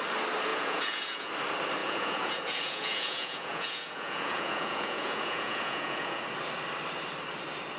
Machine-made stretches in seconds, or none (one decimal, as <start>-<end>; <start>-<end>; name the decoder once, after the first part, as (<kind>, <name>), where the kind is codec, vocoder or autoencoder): 0.5-1.3 (vocoder, Vocos); 1.8-6.2